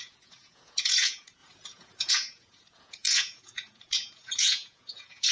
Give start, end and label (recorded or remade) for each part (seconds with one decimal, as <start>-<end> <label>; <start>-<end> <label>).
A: 0.0-5.3 remade